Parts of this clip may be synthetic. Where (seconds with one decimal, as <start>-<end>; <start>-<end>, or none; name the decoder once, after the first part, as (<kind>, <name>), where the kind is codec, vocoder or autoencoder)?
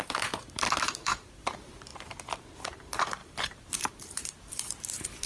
0.0-1.9 (vocoder, BigVGAN v2); 2.5-5.3